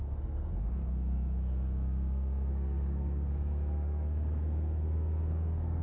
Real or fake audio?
fake